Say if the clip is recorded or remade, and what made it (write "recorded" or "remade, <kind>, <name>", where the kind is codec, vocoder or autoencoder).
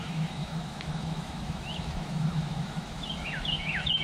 remade, autoencoder, DAC-VAE